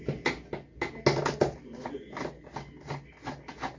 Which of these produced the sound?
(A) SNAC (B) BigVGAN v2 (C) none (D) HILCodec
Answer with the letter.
C